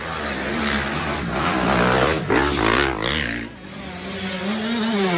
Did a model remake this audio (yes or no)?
no